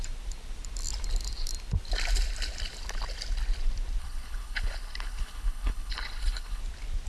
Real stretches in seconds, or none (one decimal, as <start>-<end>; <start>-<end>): 0.0-4.0; 6.6-7.1